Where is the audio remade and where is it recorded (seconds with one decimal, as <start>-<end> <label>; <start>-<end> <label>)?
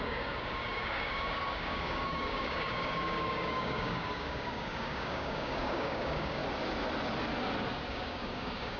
0.0-6.4 remade; 6.4-7.9 recorded; 7.9-8.8 remade